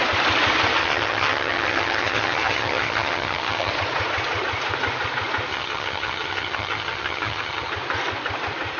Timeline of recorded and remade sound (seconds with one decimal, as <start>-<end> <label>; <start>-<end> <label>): 0.0-0.8 recorded; 0.8-3.7 remade; 3.7-5.5 recorded; 5.5-7.7 remade; 7.7-8.8 recorded